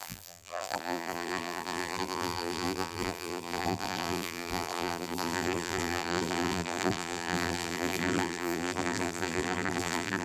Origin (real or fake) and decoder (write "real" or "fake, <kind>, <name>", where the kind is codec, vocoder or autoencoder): fake, vocoder, BigVGAN v2